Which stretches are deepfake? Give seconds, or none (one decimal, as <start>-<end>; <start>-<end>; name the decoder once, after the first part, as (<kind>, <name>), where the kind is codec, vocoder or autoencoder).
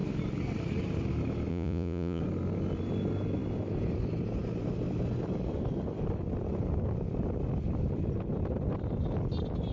1.5-2.2 (vocoder, Vocos)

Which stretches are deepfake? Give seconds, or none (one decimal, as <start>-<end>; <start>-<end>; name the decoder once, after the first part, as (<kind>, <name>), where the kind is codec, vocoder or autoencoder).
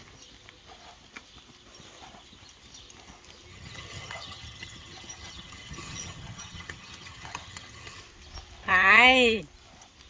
3.5-8.0 (vocoder, HiFi-GAN); 8.7-9.4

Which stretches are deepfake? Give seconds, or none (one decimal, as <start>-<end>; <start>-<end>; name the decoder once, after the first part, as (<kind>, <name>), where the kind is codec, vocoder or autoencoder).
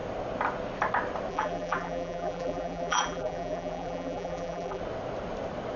1.3-4.8 (vocoder, BigVGAN v2)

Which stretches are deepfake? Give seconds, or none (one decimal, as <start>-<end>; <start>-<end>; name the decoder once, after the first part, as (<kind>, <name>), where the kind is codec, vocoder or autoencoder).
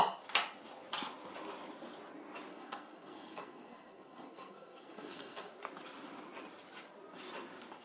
2.5-5.5 (codec, SNAC)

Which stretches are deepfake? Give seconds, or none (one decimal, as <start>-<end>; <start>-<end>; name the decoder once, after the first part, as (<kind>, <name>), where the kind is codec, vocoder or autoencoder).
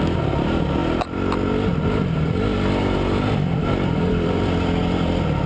none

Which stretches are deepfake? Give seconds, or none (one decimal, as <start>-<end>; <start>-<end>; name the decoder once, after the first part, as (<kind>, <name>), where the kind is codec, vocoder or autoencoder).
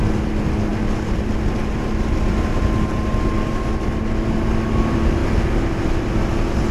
none